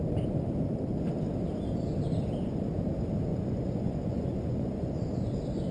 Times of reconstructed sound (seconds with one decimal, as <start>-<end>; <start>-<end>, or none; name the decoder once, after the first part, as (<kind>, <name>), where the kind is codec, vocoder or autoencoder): 3.3-4.9 (vocoder, Vocos)